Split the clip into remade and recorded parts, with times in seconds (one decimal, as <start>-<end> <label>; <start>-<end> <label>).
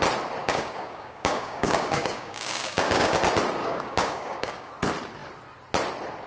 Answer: 0.0-0.4 recorded; 0.4-3.2 remade; 3.2-3.6 recorded; 3.6-4.7 remade; 4.7-6.3 recorded